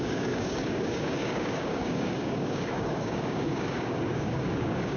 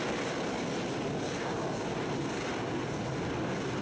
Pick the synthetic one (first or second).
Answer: first